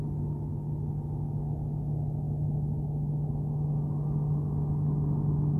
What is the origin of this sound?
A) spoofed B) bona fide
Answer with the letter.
B